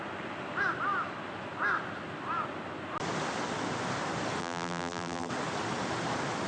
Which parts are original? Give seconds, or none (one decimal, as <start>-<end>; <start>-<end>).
0.0-4.4; 5.3-6.5